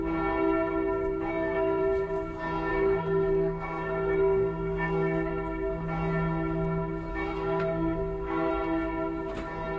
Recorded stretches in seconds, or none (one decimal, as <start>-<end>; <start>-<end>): 0.0-1.3; 1.8-2.7; 5.3-7.1; 8.5-9.8